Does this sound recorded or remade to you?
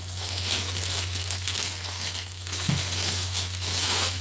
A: remade